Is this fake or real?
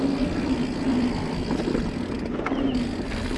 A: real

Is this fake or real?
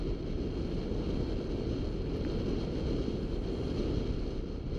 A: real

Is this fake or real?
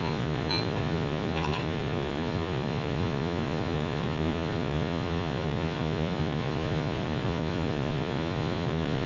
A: fake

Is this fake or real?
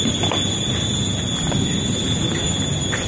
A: real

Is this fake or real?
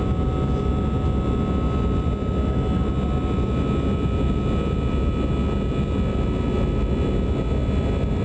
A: real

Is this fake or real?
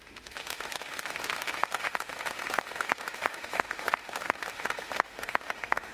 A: fake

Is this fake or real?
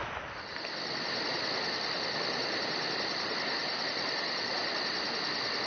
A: real